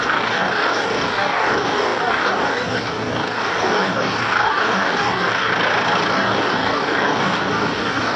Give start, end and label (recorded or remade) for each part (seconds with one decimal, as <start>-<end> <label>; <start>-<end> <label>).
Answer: 0.0-5.5 remade; 5.5-6.1 recorded; 6.1-8.2 remade